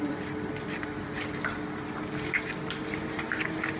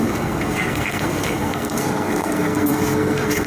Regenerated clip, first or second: second